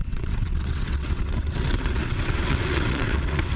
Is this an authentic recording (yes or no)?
no